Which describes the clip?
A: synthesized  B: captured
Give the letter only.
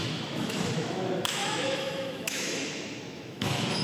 A